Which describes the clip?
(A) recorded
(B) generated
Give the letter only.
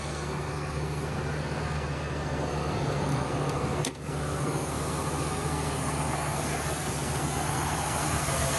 B